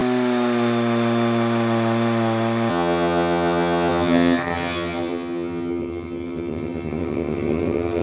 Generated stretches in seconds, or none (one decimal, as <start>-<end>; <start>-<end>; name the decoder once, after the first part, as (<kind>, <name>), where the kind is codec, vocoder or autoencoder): 2.7-8.0 (vocoder, HiFi-GAN)